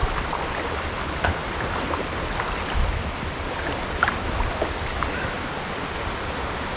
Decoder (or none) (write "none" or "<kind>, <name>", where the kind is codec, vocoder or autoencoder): none